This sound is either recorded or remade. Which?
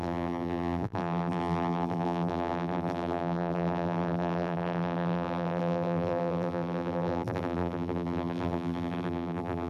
remade